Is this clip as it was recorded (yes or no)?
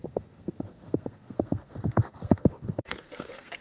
no